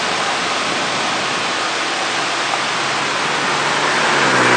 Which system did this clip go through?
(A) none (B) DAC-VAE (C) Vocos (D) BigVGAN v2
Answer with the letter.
A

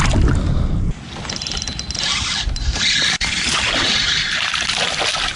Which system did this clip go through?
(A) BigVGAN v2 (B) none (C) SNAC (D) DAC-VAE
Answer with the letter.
B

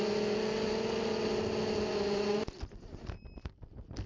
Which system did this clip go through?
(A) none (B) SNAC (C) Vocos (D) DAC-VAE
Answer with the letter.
A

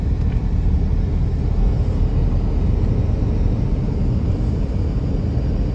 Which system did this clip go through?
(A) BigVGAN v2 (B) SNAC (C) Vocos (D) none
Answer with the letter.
D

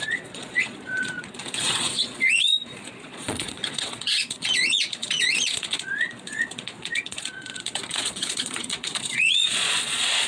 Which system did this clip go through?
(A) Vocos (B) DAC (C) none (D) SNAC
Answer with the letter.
A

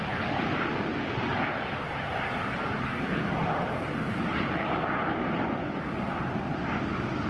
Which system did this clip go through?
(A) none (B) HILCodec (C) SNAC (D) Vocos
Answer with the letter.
A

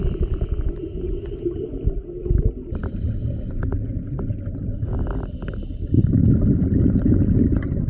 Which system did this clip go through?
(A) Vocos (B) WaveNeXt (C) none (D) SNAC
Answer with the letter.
C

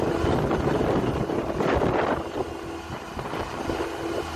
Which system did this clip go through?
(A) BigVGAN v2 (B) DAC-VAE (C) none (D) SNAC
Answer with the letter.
C